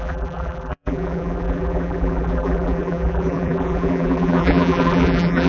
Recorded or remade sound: remade